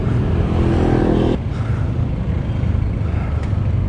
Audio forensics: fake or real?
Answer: real